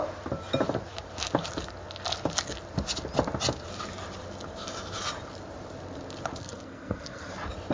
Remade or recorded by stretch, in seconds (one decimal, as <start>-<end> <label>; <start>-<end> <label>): 0.0-6.4 recorded; 6.4-7.3 remade; 7.3-7.7 recorded

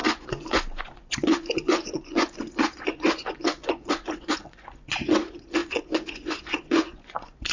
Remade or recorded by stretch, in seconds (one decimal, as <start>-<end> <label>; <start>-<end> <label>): 0.0-7.5 remade